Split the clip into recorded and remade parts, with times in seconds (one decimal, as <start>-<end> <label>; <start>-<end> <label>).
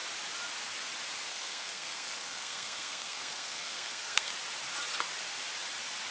0.0-1.3 recorded; 1.3-4.3 remade; 4.3-6.1 recorded